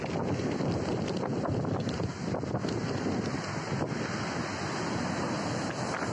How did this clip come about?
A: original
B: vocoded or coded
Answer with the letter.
A